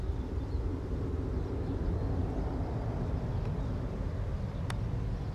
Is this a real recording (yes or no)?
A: yes